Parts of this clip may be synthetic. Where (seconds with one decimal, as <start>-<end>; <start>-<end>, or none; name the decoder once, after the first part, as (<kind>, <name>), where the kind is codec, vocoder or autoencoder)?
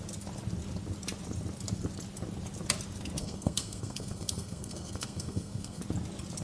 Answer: 3.2-5.8 (codec, SNAC)